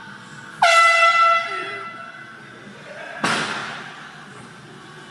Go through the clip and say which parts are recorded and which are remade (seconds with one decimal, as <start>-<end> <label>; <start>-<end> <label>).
0.0-3.6 recorded; 3.6-5.1 remade